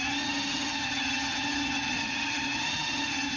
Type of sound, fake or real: fake